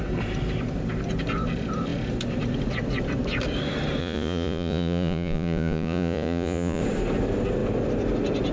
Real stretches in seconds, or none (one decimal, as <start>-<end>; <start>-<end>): 0.0-4.0; 6.8-8.5